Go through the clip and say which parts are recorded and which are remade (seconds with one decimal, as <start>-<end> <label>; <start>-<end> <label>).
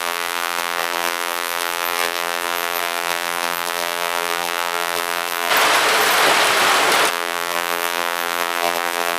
0.0-5.5 remade; 5.5-7.1 recorded; 7.1-9.2 remade